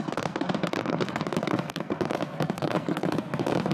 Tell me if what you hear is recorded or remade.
remade